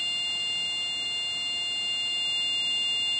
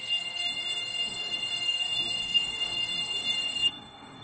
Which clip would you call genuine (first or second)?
first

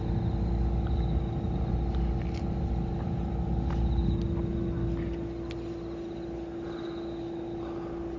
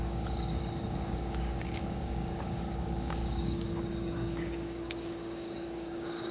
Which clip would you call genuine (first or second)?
first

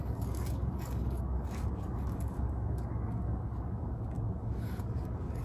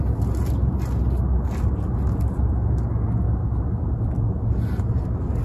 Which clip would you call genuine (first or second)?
second